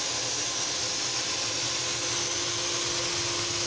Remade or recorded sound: recorded